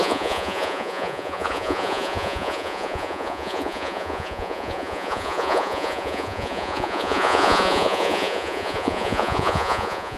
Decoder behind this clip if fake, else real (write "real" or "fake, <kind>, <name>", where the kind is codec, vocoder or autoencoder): fake, vocoder, Vocos